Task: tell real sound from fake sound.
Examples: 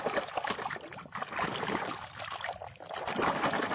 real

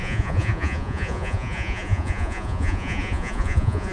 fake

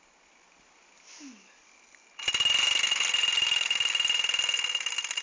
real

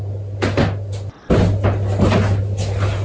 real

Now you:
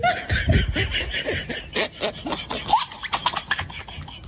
real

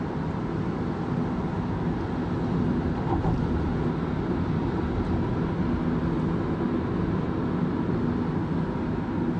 real